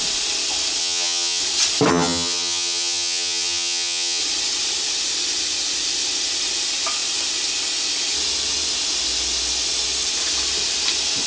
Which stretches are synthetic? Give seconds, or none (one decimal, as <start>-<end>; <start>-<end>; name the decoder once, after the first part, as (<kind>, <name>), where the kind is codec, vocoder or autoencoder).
0.8-1.4 (vocoder, HiFi-GAN); 1.9-4.2